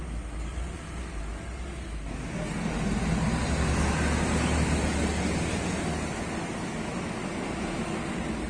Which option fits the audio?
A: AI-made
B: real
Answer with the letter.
B